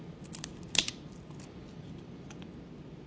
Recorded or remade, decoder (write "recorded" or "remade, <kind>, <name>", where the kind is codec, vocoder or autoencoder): recorded